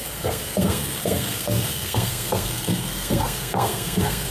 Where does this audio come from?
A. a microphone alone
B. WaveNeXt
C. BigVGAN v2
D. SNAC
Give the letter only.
D